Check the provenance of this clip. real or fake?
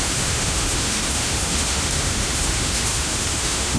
fake